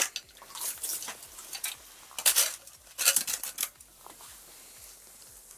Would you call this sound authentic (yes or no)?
yes